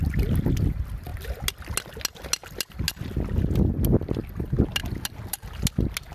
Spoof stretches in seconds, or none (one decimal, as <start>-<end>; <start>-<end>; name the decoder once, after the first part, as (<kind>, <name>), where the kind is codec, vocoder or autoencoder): none